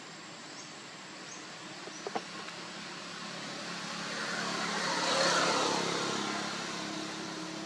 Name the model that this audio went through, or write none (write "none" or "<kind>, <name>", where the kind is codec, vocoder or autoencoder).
none